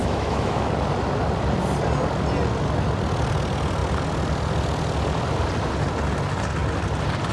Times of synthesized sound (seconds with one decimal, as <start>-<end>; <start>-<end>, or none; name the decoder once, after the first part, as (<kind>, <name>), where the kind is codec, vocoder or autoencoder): 0.0-0.7 (autoencoder, DAC-VAE)